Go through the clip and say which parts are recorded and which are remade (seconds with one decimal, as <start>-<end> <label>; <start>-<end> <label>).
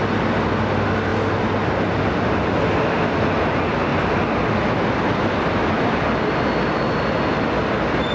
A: 0.0-8.1 recorded